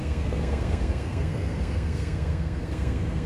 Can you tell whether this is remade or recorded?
remade